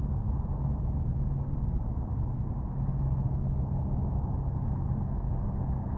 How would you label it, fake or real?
real